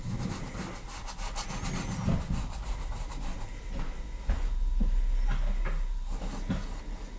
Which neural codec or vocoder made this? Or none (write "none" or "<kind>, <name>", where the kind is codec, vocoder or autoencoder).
none